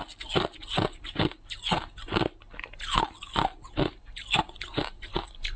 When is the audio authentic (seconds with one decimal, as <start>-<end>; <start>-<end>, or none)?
0.0-5.6